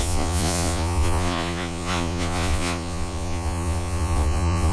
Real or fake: fake